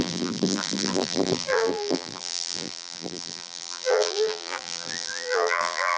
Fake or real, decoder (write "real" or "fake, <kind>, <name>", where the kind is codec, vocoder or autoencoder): fake, vocoder, BigVGAN v2